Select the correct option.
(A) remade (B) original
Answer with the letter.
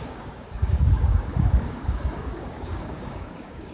A